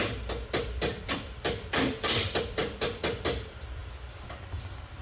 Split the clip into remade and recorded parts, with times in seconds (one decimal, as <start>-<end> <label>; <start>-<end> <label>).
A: 0.0-5.0 recorded